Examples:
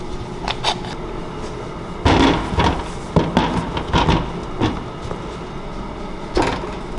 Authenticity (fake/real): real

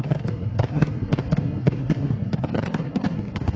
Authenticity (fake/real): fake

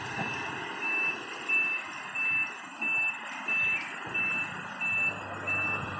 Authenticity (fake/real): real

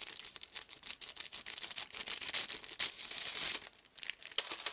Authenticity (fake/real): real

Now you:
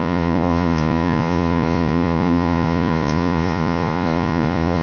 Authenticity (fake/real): fake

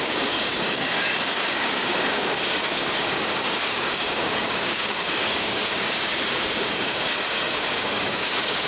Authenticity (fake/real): fake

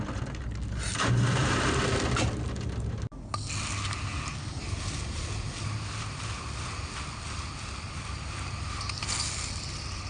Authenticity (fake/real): real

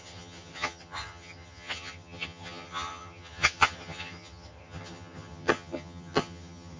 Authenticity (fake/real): fake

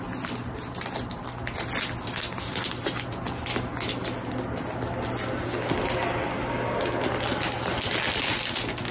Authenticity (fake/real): real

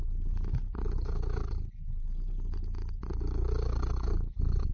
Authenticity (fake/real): real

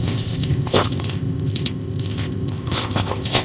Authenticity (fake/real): fake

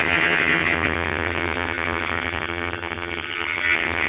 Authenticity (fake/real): fake